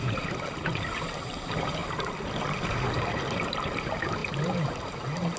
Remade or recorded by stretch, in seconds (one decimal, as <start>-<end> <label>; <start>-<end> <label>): 0.0-1.8 remade; 1.8-2.7 recorded; 2.7-5.4 remade